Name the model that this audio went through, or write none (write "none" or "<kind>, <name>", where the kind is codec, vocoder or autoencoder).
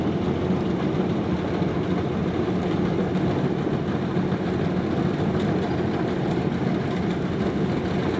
none